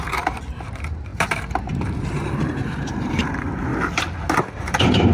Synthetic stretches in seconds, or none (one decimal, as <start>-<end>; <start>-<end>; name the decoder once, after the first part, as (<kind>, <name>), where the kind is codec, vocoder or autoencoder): 0.0-1.1 (vocoder, BigVGAN v2); 1.7-3.7; 4.5-5.1